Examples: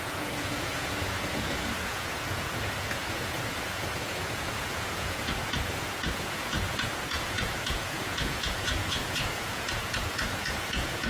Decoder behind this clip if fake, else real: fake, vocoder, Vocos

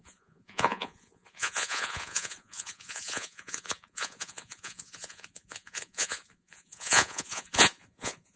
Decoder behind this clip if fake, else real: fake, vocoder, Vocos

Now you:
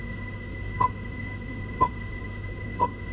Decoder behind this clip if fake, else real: fake, codec, SNAC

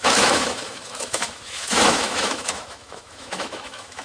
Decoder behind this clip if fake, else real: fake, autoencoder, DAC-VAE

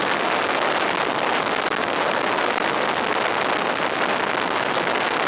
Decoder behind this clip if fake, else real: real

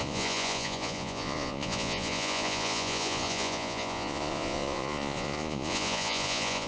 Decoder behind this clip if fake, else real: fake, vocoder, Vocos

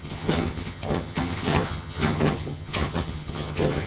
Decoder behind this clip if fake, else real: fake, vocoder, HiFi-GAN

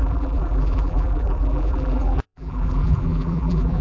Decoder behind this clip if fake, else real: fake, vocoder, BigVGAN v2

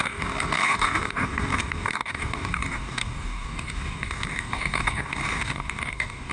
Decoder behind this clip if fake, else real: fake, codec, DAC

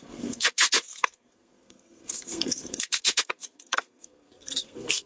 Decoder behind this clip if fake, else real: fake, codec, SNAC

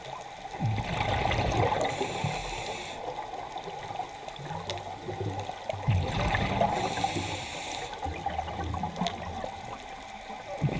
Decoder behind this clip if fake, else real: real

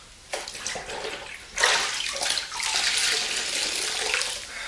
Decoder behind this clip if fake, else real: real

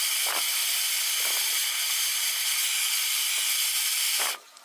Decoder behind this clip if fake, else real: real